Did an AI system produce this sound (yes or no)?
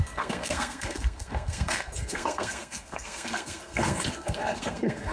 yes